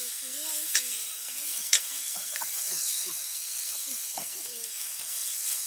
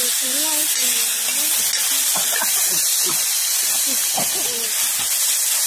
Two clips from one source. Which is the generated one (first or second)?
first